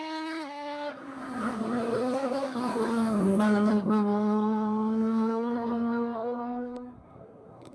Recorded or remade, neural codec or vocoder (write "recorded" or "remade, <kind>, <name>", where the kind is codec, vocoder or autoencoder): remade, codec, SNAC